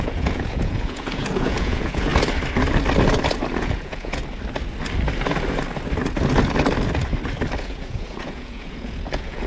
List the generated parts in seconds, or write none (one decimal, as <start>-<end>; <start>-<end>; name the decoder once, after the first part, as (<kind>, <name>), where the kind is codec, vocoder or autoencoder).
0.0-2.1 (vocoder, Vocos); 3.6-4.2; 7.6-9.5

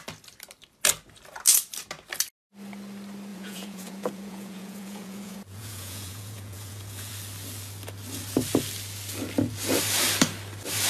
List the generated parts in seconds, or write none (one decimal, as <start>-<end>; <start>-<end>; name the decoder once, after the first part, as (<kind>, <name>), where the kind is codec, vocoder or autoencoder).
3.3-7.1 (vocoder, Vocos)